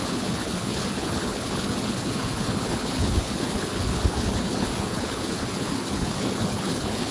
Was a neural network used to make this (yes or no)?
yes